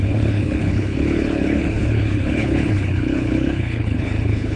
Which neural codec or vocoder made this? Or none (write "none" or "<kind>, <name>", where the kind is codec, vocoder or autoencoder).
codec, HILCodec